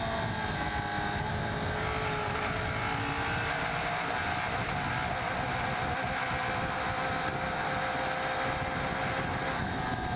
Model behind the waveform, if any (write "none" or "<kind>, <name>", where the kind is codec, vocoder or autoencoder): none